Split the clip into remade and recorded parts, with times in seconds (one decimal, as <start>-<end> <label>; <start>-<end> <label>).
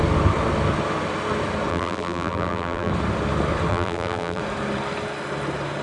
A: 0.0-1.7 recorded; 1.7-2.9 remade; 2.9-3.7 recorded; 3.7-4.4 remade; 4.4-5.8 recorded